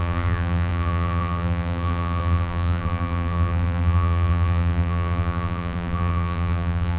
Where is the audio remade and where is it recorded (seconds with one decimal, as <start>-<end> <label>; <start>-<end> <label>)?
0.0-7.0 remade